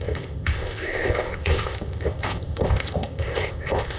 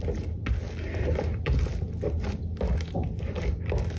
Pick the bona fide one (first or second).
second